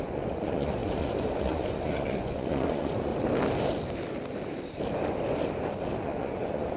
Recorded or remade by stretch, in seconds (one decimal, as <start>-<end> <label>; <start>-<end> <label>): 0.0-3.1 remade; 3.1-6.0 recorded; 6.0-6.8 remade